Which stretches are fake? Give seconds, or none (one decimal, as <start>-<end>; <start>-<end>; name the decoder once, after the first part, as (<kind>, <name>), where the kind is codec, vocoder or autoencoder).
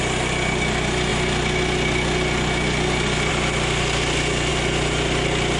none